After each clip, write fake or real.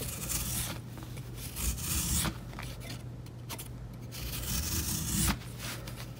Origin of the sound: real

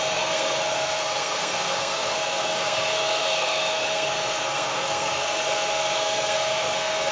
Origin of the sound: fake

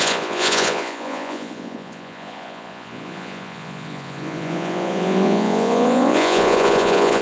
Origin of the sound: fake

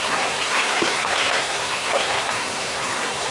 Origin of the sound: fake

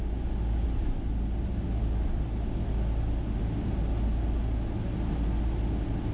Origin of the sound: real